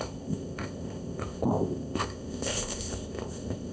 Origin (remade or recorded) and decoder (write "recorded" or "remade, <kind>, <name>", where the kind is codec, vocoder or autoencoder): remade, codec, ZipCodec